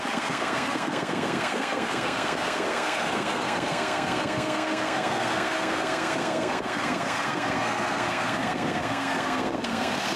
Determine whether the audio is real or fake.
fake